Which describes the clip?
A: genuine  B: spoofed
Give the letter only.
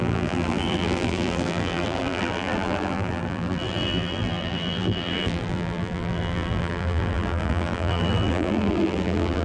B